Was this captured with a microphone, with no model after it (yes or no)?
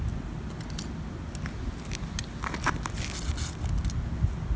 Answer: yes